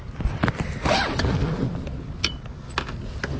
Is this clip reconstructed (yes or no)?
no